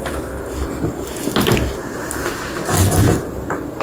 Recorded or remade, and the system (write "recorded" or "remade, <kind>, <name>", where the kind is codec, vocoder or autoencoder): recorded